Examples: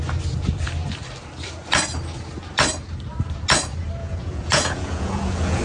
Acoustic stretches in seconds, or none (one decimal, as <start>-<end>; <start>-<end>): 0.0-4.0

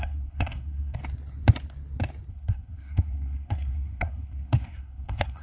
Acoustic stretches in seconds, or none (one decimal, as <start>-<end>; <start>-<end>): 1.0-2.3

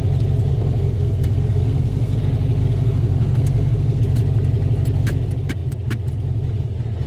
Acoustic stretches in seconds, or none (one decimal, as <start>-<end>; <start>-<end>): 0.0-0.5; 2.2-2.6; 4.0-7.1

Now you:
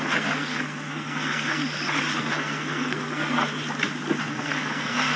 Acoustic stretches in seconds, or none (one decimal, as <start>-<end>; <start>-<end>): 1.6-2.2; 3.4-4.2